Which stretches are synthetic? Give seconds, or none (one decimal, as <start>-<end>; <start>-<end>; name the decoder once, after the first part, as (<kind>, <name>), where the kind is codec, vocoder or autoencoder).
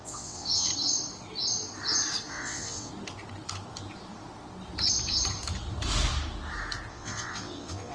0.0-0.7 (vocoder, WaveNeXt); 2.3-2.9; 6.9-7.9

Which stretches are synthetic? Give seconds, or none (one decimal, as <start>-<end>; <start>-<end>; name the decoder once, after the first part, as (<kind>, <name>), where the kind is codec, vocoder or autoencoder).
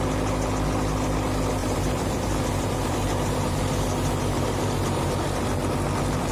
1.6-5.4 (vocoder, BigVGAN v2)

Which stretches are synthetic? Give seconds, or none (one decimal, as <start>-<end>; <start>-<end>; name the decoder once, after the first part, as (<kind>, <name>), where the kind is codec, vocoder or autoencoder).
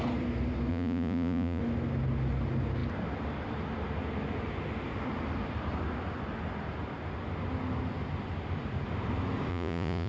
0.7-1.6 (vocoder, Vocos); 9.5-10.1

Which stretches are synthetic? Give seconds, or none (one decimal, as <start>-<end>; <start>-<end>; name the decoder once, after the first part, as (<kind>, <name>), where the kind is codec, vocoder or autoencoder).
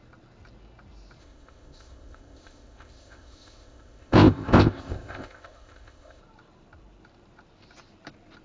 1.2-6.2 (codec, ZipCodec)